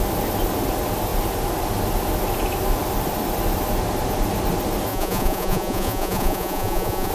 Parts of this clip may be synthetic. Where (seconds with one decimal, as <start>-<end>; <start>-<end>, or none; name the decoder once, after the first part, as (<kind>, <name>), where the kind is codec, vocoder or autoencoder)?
4.9-7.1 (vocoder, Vocos)